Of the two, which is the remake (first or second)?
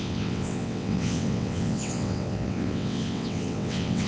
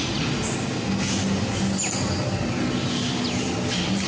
first